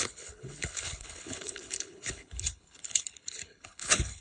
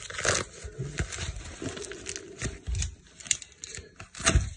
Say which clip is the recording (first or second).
second